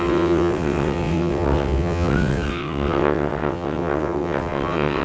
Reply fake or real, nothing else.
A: fake